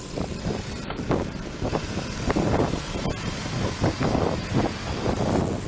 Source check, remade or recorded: recorded